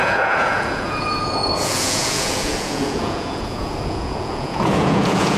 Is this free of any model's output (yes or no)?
no